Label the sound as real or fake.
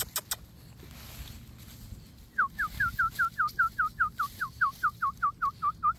real